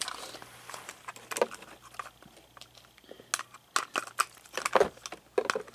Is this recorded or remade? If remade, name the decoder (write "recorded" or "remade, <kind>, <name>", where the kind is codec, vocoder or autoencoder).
recorded